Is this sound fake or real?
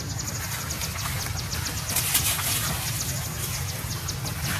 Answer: real